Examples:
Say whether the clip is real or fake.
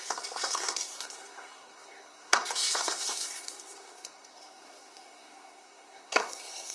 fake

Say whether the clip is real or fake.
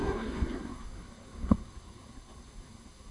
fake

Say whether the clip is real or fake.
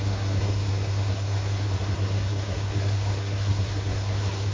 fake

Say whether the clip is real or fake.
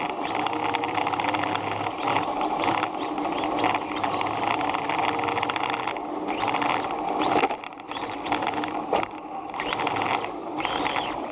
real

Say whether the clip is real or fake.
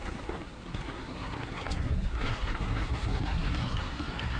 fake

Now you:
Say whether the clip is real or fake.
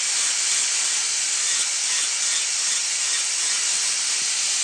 real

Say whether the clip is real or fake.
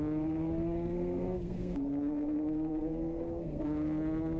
fake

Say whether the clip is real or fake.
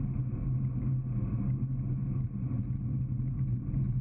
real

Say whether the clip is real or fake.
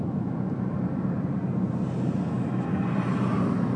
real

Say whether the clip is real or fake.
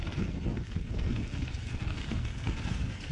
fake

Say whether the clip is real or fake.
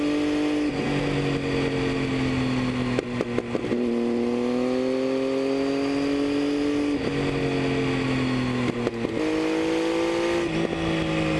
real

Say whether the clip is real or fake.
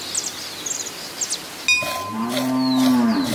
real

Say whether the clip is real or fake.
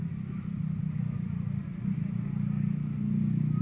real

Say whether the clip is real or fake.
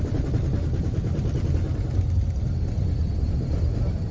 real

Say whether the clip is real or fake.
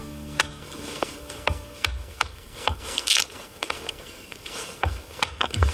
fake